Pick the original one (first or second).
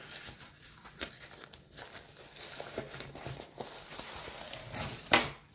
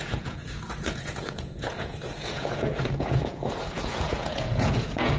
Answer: first